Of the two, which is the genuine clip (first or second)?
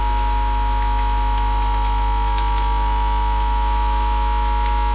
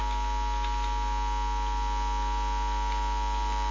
second